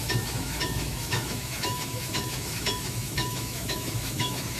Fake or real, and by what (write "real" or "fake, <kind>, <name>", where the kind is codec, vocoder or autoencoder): fake, autoencoder, DAC-VAE